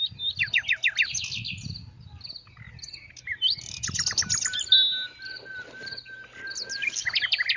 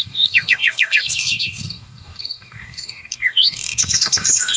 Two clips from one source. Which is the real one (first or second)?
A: first